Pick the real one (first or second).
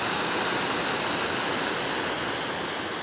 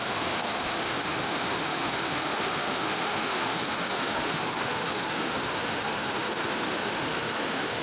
first